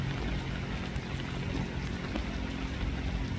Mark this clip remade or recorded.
recorded